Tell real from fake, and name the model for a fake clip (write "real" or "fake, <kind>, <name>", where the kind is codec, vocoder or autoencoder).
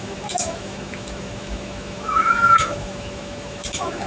fake, autoencoder, DAC-VAE